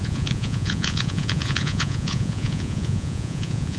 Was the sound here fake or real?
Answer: fake